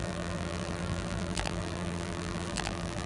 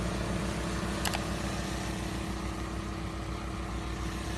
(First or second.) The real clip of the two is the second